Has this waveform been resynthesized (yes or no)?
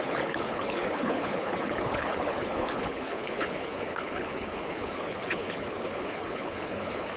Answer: yes